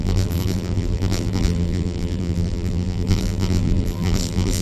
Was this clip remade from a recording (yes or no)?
yes